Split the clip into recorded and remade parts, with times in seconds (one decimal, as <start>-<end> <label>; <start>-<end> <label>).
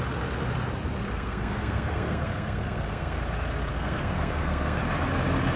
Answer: 0.0-1.1 recorded; 1.1-3.2 remade; 3.2-3.7 recorded; 3.7-4.8 remade; 4.8-5.6 recorded